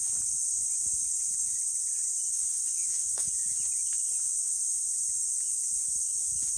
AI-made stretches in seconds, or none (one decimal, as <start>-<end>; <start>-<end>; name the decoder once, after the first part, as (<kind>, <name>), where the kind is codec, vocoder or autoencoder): 2.5-3.3 (autoencoder, DAC-VAE)